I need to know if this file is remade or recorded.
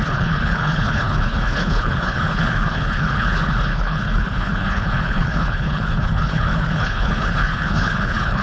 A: remade